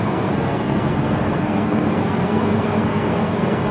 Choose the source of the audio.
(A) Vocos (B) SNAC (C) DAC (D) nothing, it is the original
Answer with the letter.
B